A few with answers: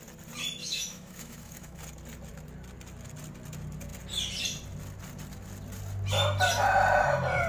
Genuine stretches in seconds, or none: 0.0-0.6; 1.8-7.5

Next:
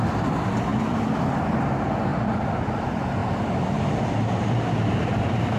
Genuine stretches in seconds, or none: 0.0-0.7; 1.3-2.1; 2.6-3.2; 4.5-5.6

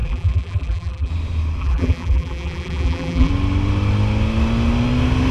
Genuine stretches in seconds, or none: 1.1-1.6; 3.3-5.3

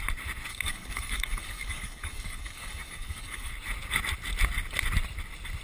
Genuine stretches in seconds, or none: 0.0-0.5; 3.5-5.6

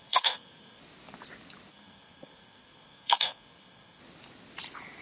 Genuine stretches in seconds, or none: 0.8-1.7; 4.0-5.0

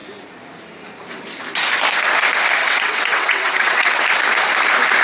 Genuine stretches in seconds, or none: 0.0-2.6; 4.0-5.0

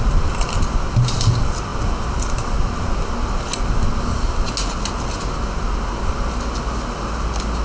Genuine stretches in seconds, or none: 0.0-7.6

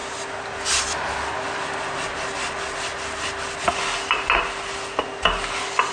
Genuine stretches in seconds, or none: 0.0-5.9